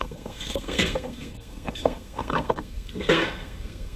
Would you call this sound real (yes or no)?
no